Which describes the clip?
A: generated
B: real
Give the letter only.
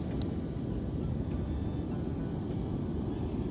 B